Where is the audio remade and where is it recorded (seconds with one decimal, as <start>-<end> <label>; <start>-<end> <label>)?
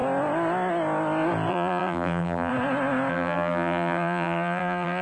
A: 0.0-1.5 recorded; 1.5-2.5 remade; 2.5-3.1 recorded; 3.1-5.0 remade